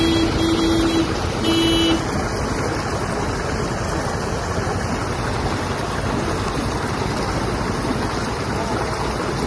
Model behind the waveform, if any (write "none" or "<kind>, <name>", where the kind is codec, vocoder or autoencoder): none